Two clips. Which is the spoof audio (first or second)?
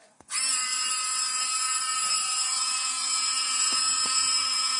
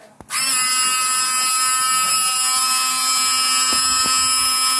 first